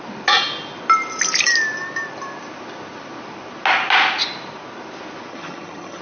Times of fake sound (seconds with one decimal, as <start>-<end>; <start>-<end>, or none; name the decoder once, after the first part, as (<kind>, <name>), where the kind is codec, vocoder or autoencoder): 5.3-6.0 (vocoder, HiFi-GAN)